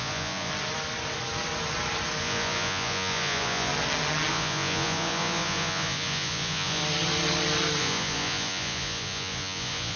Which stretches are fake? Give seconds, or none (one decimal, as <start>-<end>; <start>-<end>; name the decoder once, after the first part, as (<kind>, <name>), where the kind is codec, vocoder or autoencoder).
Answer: 0.0-0.5 (vocoder, Vocos); 2.2-3.7; 4.3-6.8; 7.8-10.0

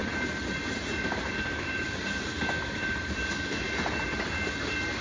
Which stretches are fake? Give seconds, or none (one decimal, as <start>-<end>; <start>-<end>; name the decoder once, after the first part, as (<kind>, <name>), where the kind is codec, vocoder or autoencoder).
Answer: none

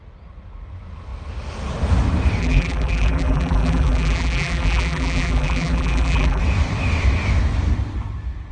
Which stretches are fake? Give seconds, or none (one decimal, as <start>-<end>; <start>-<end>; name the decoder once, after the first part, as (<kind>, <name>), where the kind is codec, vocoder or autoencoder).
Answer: 2.4-6.4 (vocoder, BigVGAN v2)

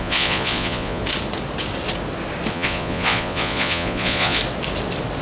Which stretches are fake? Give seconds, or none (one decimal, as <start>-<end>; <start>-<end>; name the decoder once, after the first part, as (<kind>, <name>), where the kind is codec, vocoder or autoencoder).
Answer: 0.0-1.0 (vocoder, Vocos); 2.5-4.4

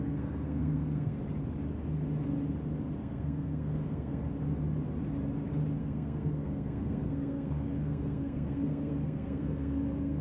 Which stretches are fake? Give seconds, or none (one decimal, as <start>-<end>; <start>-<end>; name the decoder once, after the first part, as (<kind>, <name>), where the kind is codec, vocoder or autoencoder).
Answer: 0.0-1.2 (codec, SNAC); 3.0-4.2; 5.8-10.2

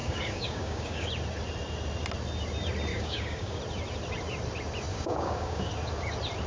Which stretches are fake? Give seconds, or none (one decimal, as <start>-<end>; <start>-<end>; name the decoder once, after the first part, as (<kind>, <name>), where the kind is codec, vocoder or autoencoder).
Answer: 0.0-1.1 (codec, DAC); 2.9-3.6; 4.9-5.7

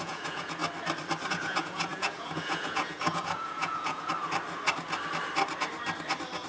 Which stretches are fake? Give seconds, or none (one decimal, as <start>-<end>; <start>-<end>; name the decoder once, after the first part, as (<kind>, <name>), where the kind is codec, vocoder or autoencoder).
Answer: 0.0-0.6 (vocoder, Vocos); 1.3-4.1